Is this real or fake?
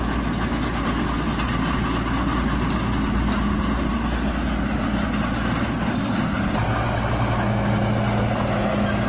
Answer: real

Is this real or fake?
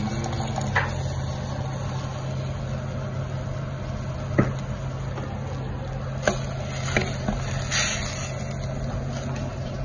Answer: real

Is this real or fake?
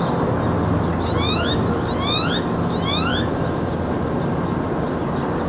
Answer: real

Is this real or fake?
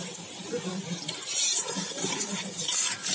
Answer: fake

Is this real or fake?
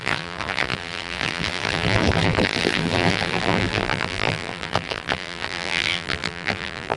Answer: fake